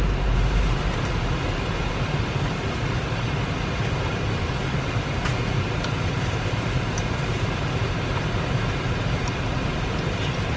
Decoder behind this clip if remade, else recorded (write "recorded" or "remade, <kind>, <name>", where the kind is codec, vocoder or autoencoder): remade, vocoder, BigVGAN v2